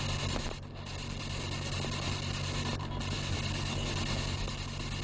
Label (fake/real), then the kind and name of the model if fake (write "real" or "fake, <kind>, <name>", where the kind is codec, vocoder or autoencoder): real